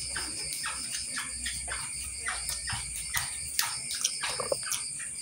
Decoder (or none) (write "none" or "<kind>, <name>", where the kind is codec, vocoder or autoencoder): none